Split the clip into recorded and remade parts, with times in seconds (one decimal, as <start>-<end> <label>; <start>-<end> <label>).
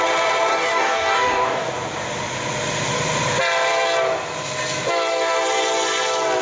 0.0-0.5 recorded; 0.5-1.7 remade; 1.7-6.4 recorded